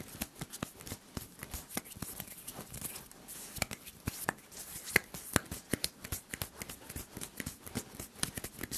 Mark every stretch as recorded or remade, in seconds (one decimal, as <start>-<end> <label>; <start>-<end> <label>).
0.0-1.4 recorded; 1.4-6.2 remade; 6.2-8.8 recorded

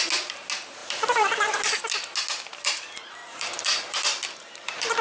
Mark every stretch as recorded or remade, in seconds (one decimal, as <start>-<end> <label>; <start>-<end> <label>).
0.0-0.8 recorded; 0.8-1.6 remade; 1.6-3.2 recorded; 3.2-5.0 remade